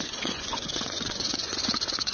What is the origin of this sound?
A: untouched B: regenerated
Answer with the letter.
B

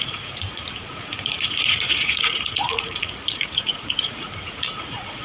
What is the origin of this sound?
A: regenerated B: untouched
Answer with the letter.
A